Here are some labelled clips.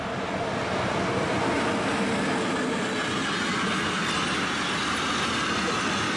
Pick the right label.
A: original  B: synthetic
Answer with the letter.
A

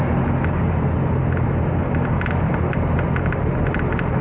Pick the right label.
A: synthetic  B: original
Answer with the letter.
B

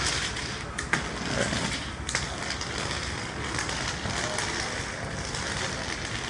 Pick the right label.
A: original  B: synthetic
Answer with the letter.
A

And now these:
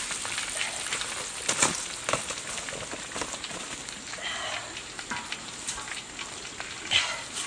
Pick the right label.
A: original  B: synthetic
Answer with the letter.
A